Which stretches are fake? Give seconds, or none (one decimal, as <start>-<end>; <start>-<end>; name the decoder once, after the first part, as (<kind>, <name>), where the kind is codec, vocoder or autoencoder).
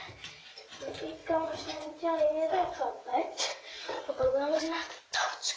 1.2-4.6 (vocoder, WaveNeXt)